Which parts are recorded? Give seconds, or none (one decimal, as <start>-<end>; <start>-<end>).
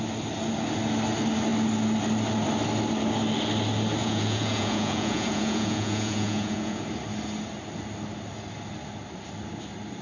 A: 0.0-4.0; 6.8-10.0